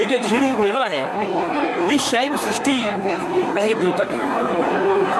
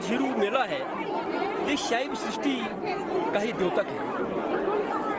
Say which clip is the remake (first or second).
first